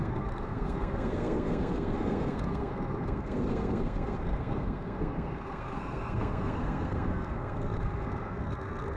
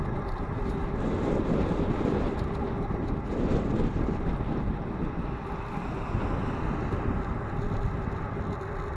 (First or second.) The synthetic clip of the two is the first